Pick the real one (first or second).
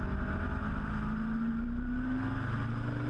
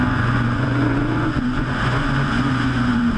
first